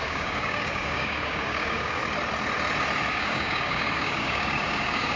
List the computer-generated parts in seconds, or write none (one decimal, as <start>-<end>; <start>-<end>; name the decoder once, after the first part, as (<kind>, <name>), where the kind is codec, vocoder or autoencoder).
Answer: 0.0-2.0 (codec, DAC); 3.1-5.2